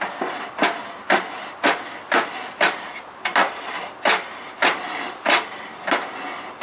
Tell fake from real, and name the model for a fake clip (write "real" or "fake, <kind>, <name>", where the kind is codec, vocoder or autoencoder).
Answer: real